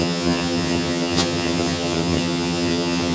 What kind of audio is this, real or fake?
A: fake